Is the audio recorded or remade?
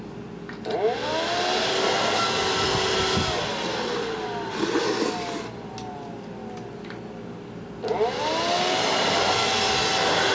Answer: recorded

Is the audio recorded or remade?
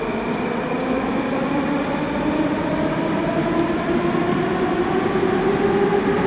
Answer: recorded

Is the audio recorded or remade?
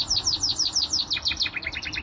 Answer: recorded